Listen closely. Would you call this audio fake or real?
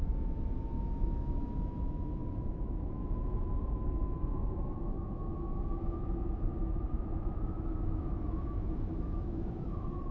fake